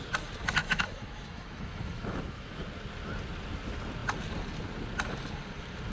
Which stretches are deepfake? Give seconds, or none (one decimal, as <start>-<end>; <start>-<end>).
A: 0.6-2.6